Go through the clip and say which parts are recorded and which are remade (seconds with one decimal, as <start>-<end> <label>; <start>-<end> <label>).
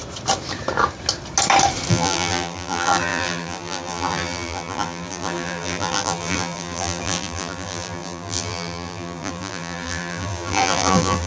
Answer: 0.0-1.9 recorded; 1.9-11.3 remade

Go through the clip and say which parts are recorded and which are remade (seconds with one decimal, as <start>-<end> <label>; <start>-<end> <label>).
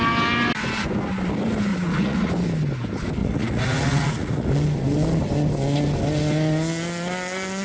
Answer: 0.0-1.7 recorded; 1.7-2.3 remade; 2.3-3.2 recorded; 3.2-4.5 remade; 4.5-7.6 recorded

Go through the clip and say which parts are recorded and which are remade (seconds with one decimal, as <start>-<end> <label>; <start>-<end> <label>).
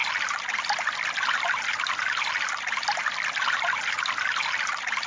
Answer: 0.0-5.1 recorded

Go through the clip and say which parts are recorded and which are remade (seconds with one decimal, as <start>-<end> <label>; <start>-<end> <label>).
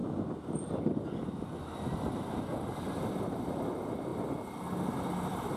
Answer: 0.0-5.6 recorded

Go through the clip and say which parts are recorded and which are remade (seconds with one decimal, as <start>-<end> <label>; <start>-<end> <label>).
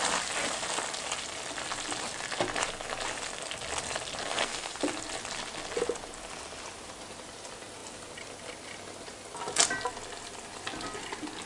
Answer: 0.0-4.2 recorded; 4.2-4.8 remade; 4.8-11.5 recorded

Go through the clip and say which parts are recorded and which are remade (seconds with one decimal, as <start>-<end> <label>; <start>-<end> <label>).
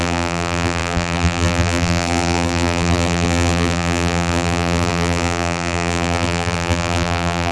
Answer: 0.0-7.5 remade